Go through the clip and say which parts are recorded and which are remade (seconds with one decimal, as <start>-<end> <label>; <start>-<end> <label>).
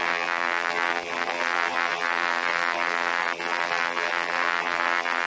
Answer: 0.0-5.3 remade